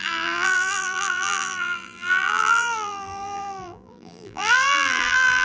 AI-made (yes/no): yes